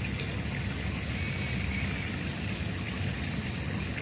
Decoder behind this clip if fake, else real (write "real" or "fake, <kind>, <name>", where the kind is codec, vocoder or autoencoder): real